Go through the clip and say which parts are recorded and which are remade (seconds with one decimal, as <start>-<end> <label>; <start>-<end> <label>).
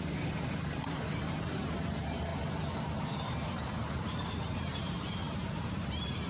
0.0-2.3 remade; 2.3-3.0 recorded; 3.0-6.3 remade